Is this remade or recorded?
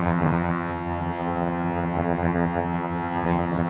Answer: remade